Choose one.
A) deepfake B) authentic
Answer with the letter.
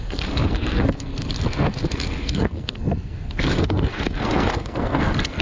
A